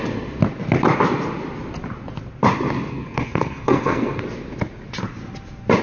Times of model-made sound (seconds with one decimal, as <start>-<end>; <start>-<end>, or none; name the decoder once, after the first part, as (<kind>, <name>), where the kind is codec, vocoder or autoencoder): 2.9-4.2 (codec, SNAC)